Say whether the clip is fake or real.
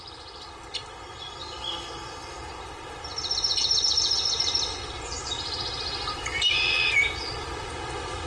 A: real